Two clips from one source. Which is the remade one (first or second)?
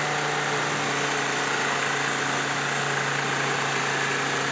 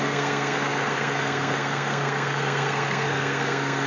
second